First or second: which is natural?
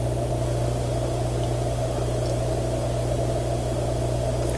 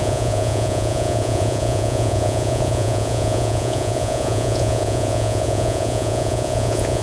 first